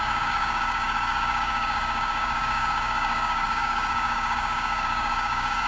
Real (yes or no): no